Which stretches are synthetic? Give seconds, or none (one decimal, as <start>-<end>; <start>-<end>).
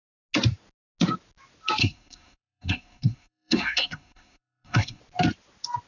1.8-5.0